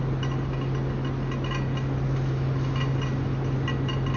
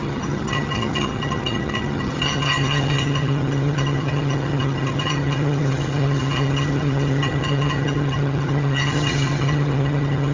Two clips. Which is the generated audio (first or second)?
second